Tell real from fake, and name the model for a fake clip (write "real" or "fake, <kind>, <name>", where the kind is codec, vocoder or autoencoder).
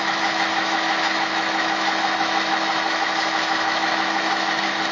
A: fake, autoencoder, DAC-VAE